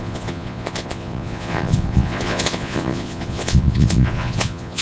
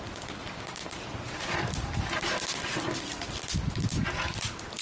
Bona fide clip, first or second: second